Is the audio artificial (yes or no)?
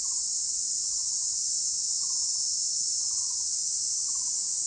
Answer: no